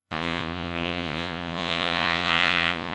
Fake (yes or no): yes